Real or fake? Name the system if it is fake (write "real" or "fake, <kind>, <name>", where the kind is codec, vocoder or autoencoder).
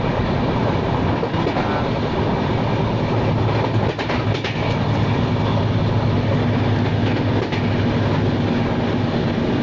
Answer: real